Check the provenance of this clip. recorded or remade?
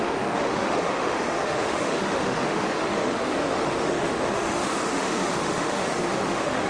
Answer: remade